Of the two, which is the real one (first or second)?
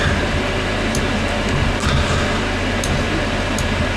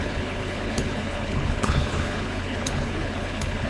first